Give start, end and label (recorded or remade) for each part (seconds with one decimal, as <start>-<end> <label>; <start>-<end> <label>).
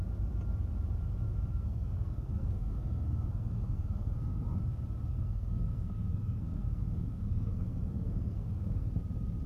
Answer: 0.0-1.5 recorded; 1.5-4.6 remade; 4.6-5.1 recorded; 5.1-8.9 remade; 8.9-9.5 recorded